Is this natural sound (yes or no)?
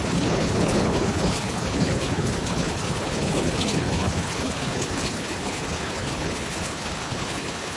no